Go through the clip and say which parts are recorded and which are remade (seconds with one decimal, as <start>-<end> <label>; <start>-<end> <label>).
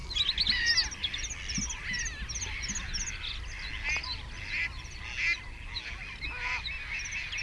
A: 0.0-7.4 recorded